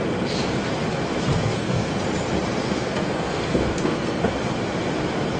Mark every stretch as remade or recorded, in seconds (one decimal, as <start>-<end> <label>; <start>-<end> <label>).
0.0-1.3 recorded; 1.3-1.9 remade; 1.9-2.6 recorded; 2.6-4.3 remade; 4.3-5.4 recorded